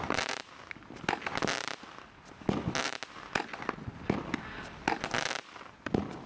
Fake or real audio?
real